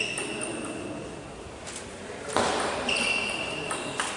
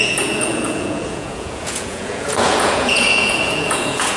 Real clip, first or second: first